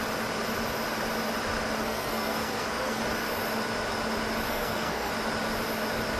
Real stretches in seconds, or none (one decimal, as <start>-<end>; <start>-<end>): 0.0-1.8; 3.0-4.5; 5.1-6.2